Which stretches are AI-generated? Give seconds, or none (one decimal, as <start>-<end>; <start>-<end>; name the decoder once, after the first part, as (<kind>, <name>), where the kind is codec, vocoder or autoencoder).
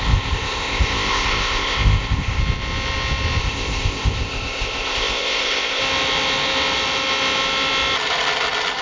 0.0-2.4 (codec, ZipCodec); 3.4-5.8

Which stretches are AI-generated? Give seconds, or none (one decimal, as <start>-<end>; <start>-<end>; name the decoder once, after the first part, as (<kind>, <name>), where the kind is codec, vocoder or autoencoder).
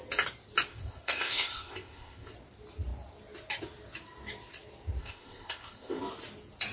0.7-2.3 (codec, ZipCodec); 5.0-6.0